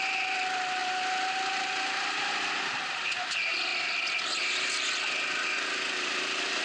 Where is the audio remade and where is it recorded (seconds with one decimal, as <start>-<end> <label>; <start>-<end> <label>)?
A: 0.0-6.6 recorded